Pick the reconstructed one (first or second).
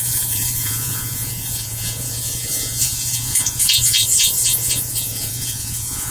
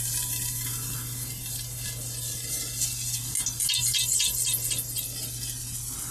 first